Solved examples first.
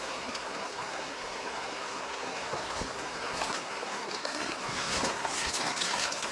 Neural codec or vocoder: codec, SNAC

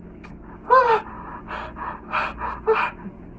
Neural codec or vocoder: none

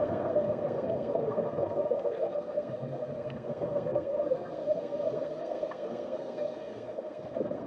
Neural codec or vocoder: codec, SNAC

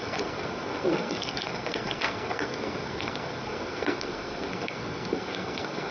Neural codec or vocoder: codec, SNAC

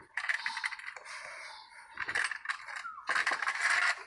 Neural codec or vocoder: none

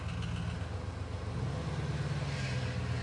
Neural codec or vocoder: none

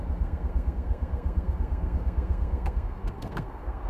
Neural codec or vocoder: codec, SNAC